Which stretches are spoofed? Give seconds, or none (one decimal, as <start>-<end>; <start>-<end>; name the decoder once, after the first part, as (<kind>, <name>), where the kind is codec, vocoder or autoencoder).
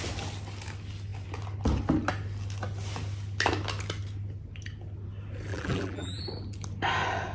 5.5-6.2 (vocoder, BigVGAN v2)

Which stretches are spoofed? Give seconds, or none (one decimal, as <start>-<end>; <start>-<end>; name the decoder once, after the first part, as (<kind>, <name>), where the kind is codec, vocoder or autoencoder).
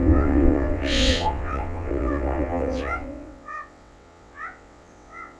0.0-5.4 (vocoder, WaveNeXt)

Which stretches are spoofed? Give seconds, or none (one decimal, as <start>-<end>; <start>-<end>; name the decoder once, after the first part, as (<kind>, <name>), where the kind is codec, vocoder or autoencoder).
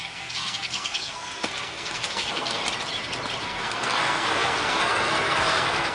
0.0-2.6 (codec, SNAC); 3.4-5.9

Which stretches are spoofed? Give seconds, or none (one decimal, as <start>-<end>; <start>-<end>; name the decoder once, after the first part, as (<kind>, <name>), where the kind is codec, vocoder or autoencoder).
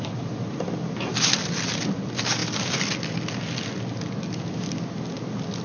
none